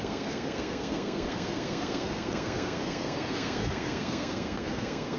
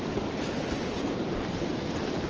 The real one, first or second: second